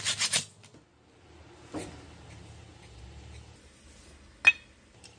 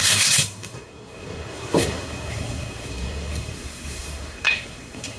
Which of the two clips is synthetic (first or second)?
second